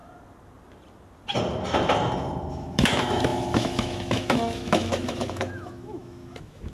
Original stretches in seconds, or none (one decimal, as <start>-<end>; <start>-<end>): 0.0-2.5